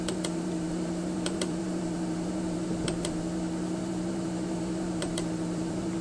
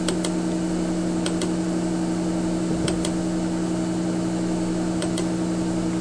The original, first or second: second